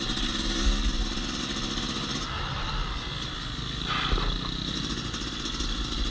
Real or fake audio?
real